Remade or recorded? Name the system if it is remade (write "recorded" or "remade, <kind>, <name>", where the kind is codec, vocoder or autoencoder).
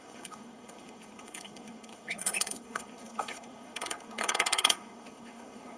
remade, codec, SNAC